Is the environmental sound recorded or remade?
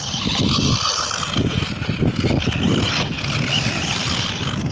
recorded